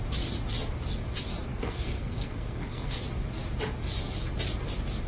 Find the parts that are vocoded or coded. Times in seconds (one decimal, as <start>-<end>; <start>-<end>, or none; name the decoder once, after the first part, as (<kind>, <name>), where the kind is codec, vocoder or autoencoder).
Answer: 1.5-3.0 (codec, SNAC)